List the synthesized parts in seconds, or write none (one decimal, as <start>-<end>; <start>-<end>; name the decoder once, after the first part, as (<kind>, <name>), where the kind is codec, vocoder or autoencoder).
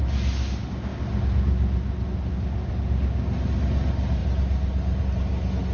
none